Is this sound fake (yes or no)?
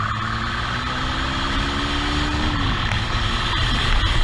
no